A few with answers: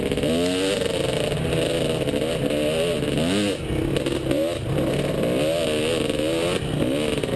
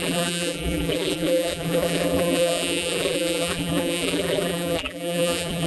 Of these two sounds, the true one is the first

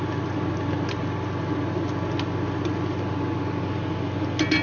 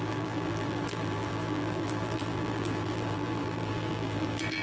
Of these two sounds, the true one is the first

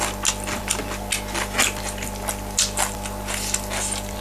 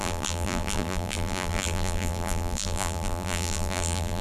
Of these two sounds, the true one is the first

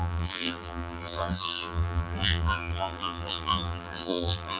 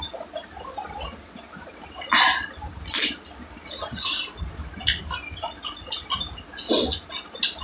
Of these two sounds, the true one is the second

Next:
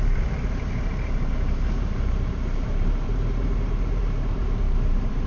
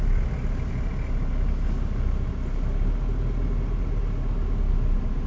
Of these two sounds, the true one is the second